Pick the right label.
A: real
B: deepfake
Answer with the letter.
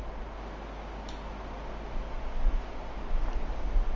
A